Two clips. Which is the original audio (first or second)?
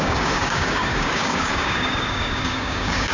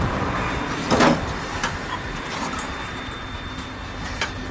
second